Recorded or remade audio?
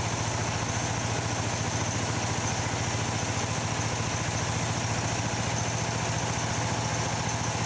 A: recorded